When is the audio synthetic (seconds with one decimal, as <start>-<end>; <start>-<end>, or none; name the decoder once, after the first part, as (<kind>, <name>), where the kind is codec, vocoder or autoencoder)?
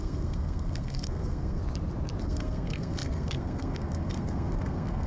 0.0-1.6 (codec, SNAC); 2.2-5.1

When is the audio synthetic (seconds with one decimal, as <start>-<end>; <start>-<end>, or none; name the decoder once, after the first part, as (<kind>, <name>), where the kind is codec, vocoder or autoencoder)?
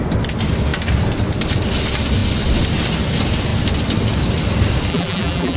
4.9-5.6 (vocoder, BigVGAN v2)